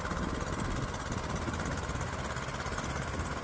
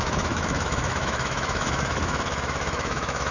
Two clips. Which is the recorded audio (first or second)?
first